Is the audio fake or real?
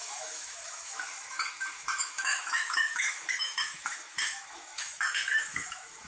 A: fake